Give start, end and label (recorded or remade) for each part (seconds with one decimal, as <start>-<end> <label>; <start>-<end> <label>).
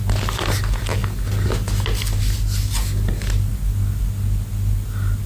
0.0-5.3 recorded